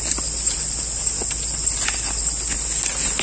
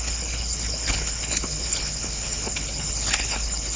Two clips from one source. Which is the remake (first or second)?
second